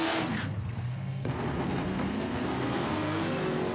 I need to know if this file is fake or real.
fake